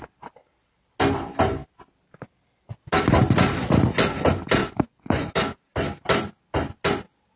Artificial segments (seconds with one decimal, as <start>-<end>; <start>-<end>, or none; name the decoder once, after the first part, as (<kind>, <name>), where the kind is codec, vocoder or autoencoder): 4.6-5.3 (vocoder, Vocos)